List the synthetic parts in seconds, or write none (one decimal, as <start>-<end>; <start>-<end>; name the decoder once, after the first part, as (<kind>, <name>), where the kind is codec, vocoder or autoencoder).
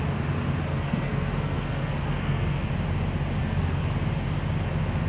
0.7-2.7 (codec, SNAC); 3.4-3.9